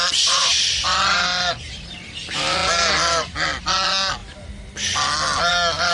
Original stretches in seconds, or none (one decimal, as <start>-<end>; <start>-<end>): 0.0-5.9